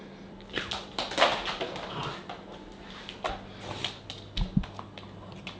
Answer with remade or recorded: recorded